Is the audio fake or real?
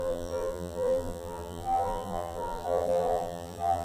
fake